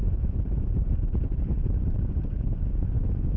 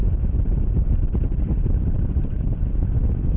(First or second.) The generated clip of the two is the first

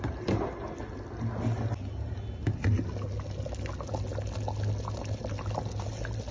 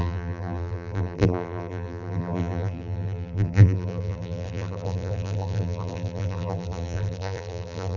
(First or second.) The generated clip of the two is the second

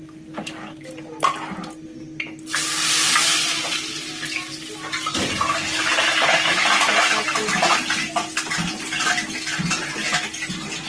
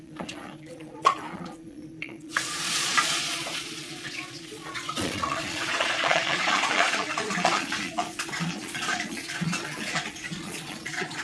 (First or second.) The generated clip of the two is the second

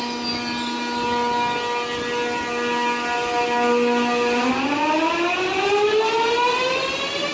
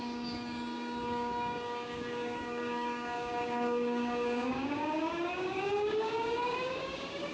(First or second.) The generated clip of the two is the second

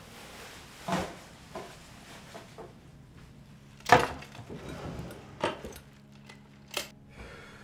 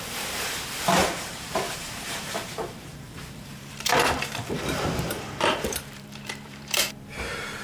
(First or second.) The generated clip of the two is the second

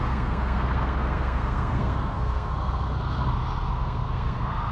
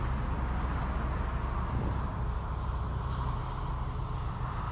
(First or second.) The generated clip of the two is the first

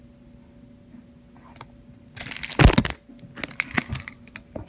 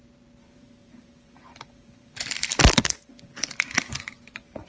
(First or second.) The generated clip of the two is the second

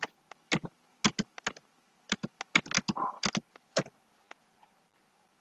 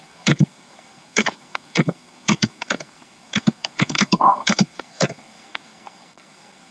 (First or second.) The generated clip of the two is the second